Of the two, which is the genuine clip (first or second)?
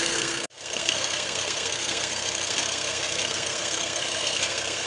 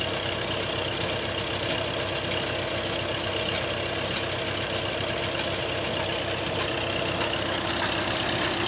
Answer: second